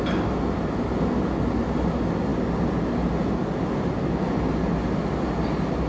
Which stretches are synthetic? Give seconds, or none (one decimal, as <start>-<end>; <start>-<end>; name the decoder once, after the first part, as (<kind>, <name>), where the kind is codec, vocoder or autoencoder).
none